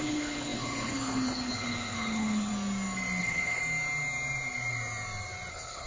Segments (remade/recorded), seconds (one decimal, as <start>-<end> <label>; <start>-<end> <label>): 0.0-2.5 remade; 2.5-3.2 recorded; 3.2-3.6 remade; 3.6-5.5 recorded; 5.5-5.9 remade